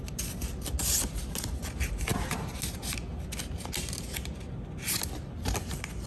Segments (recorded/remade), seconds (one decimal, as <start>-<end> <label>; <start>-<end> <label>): 0.0-6.1 recorded